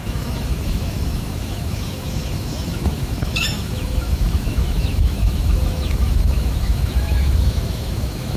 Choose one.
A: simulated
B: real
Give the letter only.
A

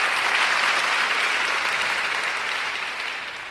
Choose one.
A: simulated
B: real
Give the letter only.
B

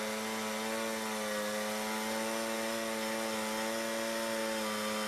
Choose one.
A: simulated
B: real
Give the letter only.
B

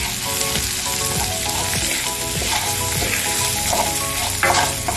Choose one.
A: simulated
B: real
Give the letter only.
B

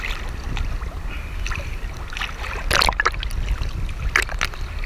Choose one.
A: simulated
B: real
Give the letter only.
B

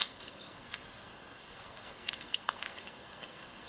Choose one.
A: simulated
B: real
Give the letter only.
A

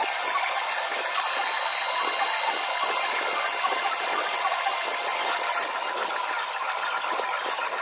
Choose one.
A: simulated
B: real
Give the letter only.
B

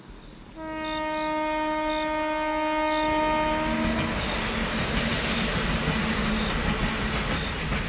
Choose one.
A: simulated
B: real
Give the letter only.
B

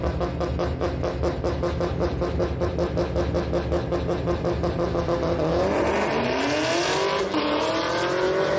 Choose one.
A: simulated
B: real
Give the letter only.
B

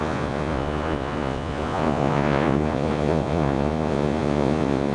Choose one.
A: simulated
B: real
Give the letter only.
A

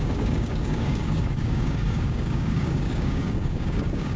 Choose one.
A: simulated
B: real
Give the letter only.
A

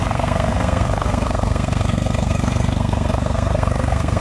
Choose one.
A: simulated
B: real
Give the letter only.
A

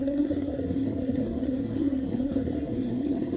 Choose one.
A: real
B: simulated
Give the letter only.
B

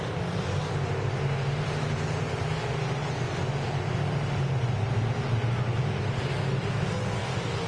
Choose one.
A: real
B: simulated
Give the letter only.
A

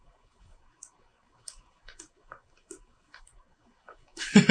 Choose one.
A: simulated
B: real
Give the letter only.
A